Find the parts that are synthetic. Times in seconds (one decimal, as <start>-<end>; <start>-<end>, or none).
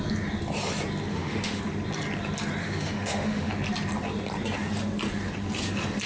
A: 1.1-1.6; 2.6-3.5